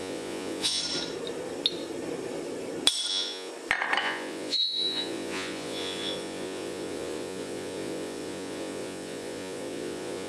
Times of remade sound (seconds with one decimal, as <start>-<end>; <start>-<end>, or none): 0.0-0.8; 3.1-3.5; 4.0-10.3